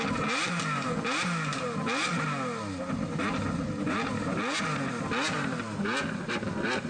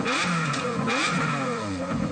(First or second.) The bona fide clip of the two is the first